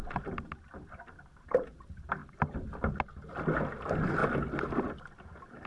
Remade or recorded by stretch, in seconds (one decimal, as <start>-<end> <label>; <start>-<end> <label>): 0.0-5.7 recorded